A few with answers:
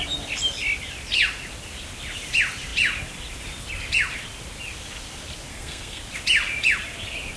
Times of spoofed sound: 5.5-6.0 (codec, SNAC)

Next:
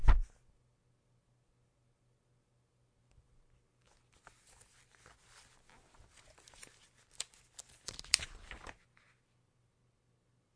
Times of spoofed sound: none

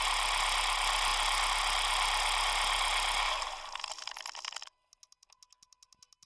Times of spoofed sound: none

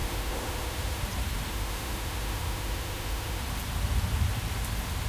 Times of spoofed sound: 0.0-1.0 (autoencoder, DAC-VAE); 1.5-3.4

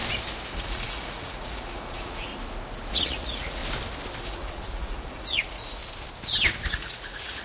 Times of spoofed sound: 0.5-2.3 (vocoder, Vocos); 2.9-3.6; 4.2-5.8; 6.7-7.4

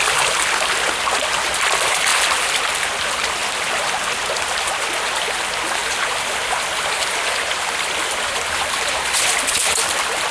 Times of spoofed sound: 5.8-8.7 (vocoder, BigVGAN v2)

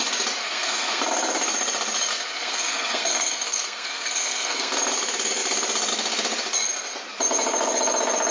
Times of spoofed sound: 0.4-1.0 (codec, SNAC); 2.1-4.7